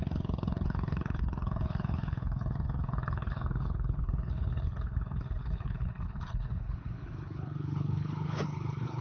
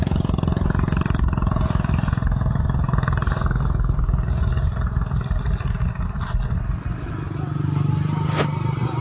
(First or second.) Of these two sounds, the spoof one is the first